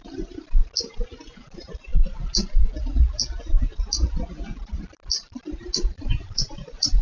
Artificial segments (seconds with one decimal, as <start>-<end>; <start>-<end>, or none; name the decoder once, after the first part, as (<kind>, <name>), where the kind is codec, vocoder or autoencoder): 0.0-0.6 (vocoder, BigVGAN v2); 1.5-1.9; 5.8-7.0